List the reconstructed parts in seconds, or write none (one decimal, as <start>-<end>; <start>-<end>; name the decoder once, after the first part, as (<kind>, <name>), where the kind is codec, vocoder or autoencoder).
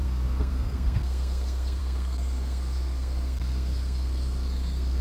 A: 0.0-5.0 (codec, SNAC)